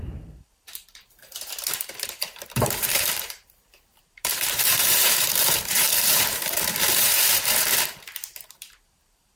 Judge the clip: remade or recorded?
remade